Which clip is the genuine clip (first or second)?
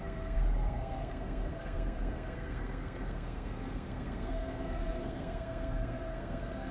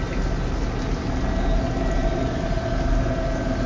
second